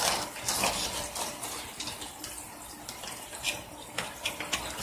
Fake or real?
real